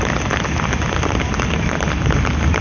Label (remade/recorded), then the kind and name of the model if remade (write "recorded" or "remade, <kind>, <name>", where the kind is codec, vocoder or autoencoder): recorded